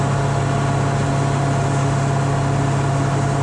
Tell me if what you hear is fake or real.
real